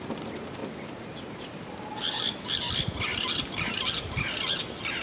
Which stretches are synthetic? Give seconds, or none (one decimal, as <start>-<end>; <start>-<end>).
0.0-5.0